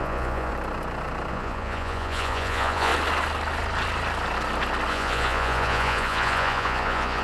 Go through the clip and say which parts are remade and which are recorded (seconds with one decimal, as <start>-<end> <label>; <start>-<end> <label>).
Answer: 0.0-0.5 remade; 0.5-1.3 recorded; 1.3-2.9 remade; 2.9-4.9 recorded; 4.9-7.2 remade